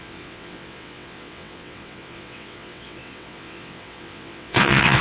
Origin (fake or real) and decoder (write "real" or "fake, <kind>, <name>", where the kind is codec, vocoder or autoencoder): fake, vocoder, WaveNeXt